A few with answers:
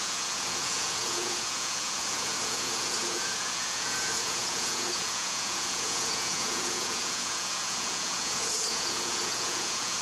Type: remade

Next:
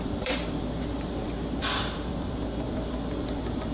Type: remade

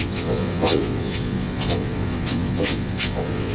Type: remade